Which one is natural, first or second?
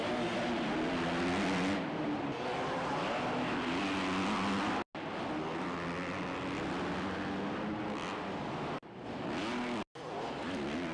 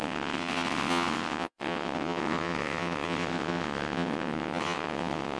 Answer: first